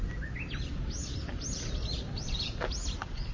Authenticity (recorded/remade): recorded